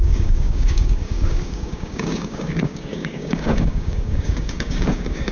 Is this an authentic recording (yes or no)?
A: no